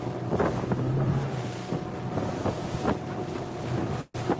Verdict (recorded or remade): recorded